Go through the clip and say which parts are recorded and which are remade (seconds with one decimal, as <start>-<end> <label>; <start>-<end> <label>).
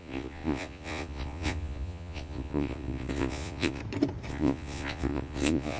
0.0-3.8 remade; 3.8-4.3 recorded; 4.3-5.8 remade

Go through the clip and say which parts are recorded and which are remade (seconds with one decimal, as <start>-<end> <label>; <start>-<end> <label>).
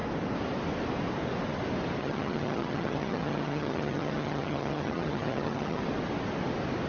0.0-2.0 recorded; 2.0-5.8 remade; 5.8-6.9 recorded